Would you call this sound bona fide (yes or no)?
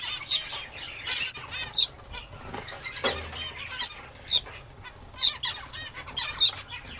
yes